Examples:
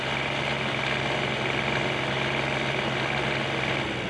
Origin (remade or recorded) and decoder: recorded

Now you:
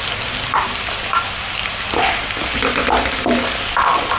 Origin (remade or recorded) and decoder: recorded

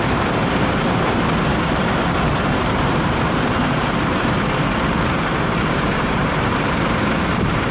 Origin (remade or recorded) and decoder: remade, vocoder, BigVGAN v2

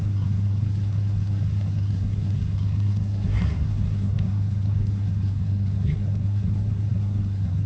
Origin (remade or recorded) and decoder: remade, codec, SNAC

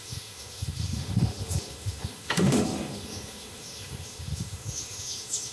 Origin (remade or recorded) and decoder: remade, autoencoder, DAC-VAE